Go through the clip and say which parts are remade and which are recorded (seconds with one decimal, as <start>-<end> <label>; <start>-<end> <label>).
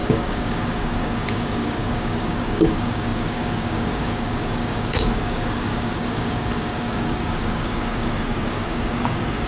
0.0-9.5 remade